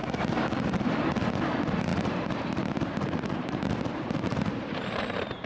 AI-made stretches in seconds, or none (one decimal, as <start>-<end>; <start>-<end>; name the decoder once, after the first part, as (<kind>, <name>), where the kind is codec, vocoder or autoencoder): 0.0-1.1 (vocoder, BigVGAN v2); 1.9-5.5